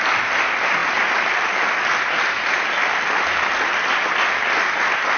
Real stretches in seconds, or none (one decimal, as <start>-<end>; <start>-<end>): 0.0-5.2